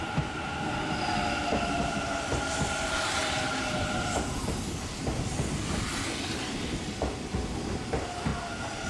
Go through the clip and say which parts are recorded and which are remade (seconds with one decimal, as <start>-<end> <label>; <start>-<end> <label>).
0.0-8.9 recorded